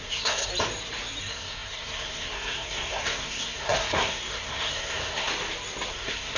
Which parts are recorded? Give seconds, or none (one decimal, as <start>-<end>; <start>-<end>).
0.5-1.2; 5.3-5.9